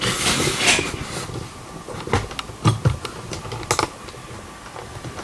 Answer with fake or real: real